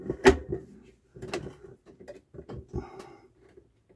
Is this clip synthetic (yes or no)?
no